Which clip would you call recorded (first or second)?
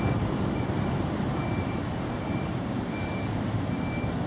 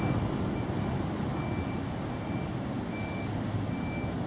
second